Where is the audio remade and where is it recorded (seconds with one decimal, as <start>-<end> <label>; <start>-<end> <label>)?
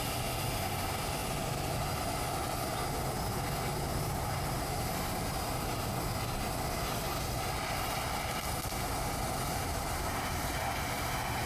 0.0-3.9 recorded; 3.9-5.8 remade; 5.8-9.5 recorded; 9.5-10.6 remade; 10.6-11.5 recorded